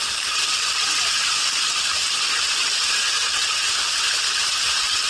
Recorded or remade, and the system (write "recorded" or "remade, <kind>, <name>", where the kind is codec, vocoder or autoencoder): remade, vocoder, BigVGAN v2